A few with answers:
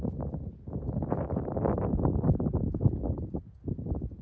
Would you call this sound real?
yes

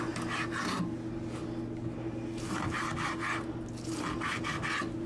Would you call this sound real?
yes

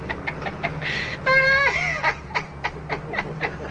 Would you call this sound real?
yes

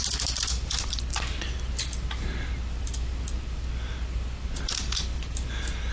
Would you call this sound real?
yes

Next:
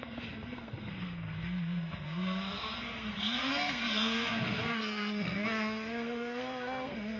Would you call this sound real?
no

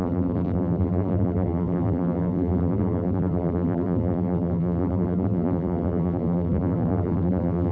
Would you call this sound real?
no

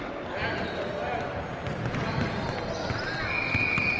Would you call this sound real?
yes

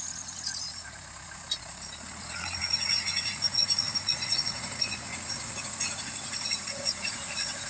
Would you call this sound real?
no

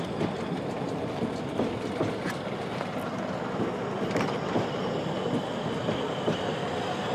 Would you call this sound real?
yes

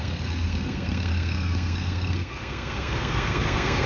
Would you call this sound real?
no